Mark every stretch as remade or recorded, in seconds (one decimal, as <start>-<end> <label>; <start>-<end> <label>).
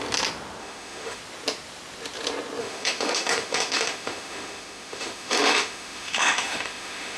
0.0-0.6 recorded; 0.6-1.2 remade; 1.2-2.6 recorded; 2.6-7.2 remade